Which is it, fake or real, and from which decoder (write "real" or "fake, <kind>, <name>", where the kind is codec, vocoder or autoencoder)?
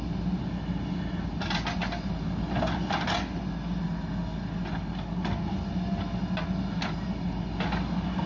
real